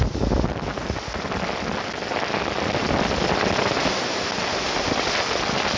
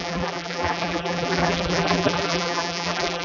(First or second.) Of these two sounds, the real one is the first